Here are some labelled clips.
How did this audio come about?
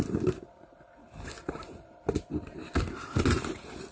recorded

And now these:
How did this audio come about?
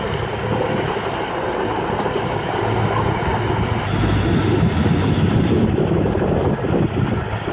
recorded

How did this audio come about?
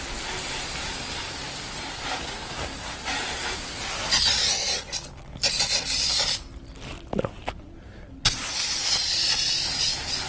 recorded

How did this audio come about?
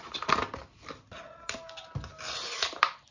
recorded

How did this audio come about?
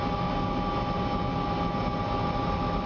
recorded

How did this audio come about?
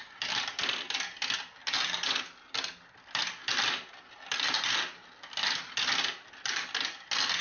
recorded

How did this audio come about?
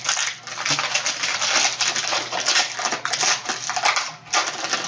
recorded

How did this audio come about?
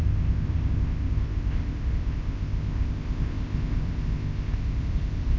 remade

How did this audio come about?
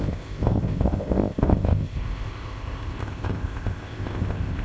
remade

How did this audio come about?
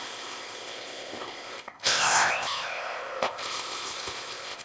remade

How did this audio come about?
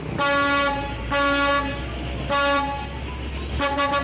recorded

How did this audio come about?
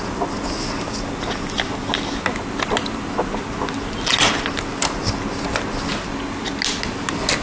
recorded